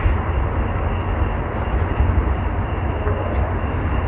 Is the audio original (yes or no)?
yes